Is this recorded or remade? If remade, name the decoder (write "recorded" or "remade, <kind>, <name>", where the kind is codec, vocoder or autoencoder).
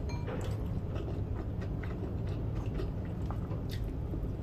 recorded